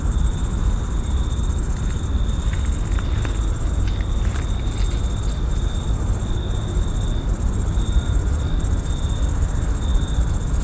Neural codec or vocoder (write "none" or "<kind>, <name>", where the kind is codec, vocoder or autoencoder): none